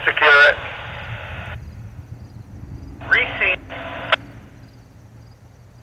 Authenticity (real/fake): real